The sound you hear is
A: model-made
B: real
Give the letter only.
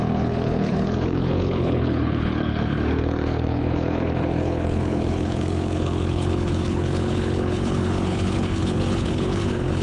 A